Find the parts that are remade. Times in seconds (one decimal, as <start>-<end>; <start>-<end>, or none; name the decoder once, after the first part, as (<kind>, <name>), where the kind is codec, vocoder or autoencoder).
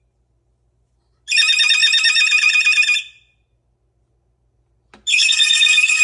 5.1-6.0 (codec, SNAC)